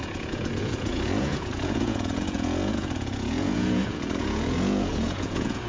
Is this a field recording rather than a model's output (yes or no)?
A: no